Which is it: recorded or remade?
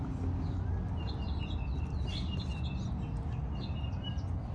recorded